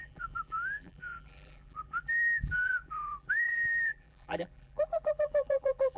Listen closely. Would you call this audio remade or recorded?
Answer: remade